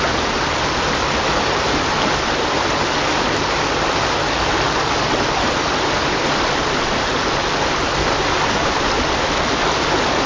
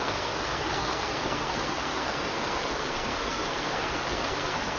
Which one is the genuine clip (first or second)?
first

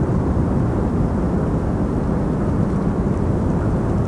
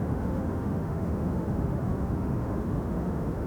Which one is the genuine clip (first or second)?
first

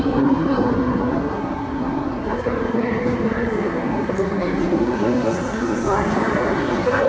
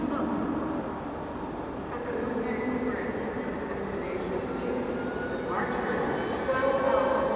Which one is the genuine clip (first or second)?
second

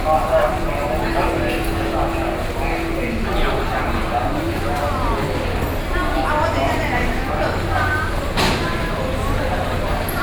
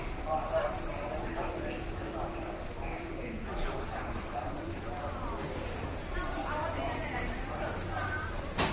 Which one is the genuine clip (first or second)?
first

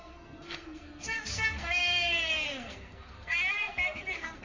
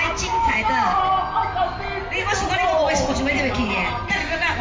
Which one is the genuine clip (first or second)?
second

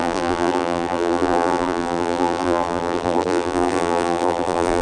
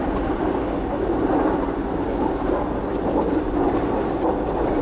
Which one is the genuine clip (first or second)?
second